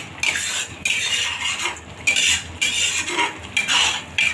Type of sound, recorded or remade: recorded